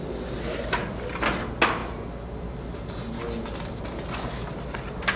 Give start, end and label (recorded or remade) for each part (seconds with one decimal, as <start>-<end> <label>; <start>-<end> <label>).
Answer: 0.0-5.2 recorded